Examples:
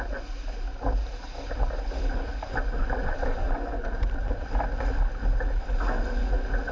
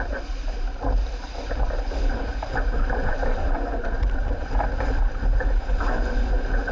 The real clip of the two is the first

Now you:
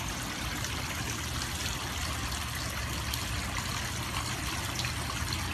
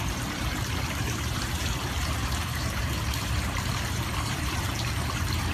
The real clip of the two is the first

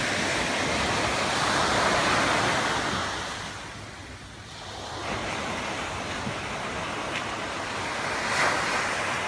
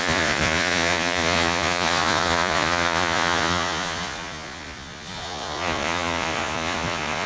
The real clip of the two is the first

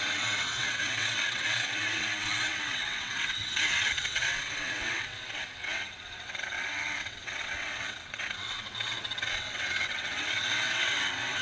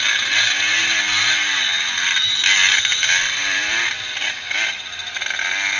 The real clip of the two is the second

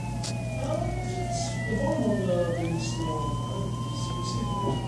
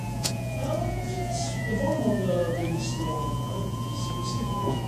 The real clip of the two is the first